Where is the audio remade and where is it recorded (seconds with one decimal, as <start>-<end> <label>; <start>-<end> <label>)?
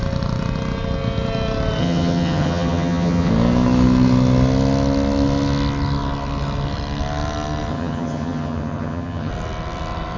0.0-1.8 recorded; 1.8-3.3 remade; 3.3-7.7 recorded; 7.7-9.3 remade; 9.3-10.2 recorded